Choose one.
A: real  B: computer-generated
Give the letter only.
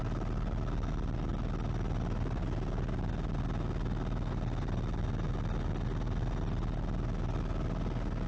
A